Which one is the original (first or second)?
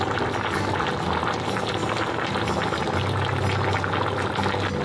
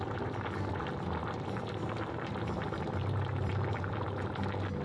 first